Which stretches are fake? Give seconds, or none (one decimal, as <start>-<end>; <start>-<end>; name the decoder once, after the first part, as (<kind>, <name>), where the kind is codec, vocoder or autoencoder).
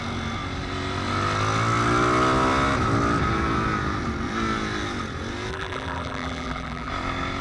5.5-6.9 (vocoder, BigVGAN v2)